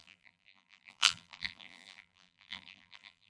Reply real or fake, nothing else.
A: fake